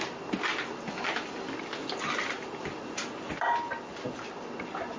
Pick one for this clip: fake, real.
real